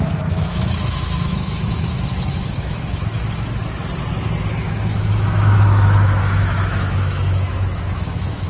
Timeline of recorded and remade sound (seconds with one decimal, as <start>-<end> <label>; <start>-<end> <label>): 0.0-3.6 remade; 3.6-4.6 recorded; 4.6-8.5 remade